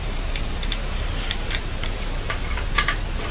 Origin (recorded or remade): remade